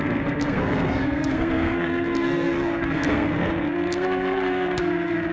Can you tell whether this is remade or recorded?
remade